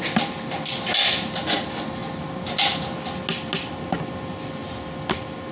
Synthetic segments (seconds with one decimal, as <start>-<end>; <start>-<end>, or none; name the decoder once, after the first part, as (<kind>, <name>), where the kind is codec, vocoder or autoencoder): none